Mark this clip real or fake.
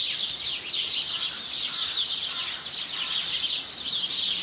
real